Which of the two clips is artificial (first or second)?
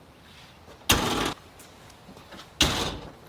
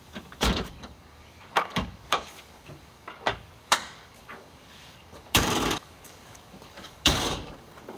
second